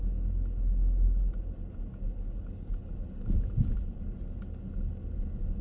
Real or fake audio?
real